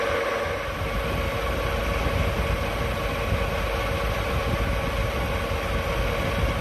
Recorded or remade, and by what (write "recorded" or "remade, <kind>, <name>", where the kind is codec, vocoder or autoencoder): recorded